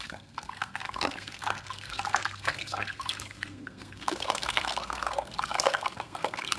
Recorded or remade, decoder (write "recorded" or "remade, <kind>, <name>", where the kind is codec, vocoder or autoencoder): remade, codec, SNAC